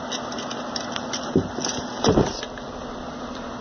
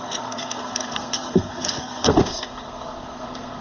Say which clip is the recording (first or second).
first